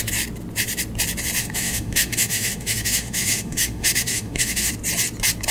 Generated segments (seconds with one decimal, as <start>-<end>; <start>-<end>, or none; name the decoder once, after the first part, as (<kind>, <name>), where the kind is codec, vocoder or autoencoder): 1.4-4.7 (autoencoder, DAC-VAE)

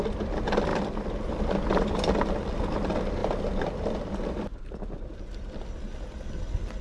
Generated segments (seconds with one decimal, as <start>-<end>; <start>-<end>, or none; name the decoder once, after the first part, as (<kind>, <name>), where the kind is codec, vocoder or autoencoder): none

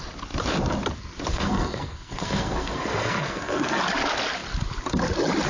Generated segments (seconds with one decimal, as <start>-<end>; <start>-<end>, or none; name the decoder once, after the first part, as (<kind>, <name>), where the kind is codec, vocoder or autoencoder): 1.3-3.8 (codec, SNAC)

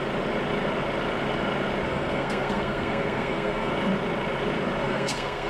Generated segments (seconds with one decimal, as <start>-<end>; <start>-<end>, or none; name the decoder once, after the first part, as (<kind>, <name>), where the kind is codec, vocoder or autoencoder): 1.9-3.7 (codec, SNAC); 4.8-5.5